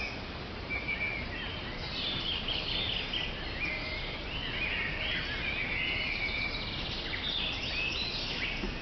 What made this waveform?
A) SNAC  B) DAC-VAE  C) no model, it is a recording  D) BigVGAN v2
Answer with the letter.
C